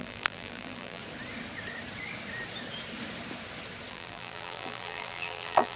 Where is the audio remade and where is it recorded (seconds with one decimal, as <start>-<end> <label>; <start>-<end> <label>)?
0.0-1.0 remade; 1.0-3.9 recorded; 3.9-5.8 remade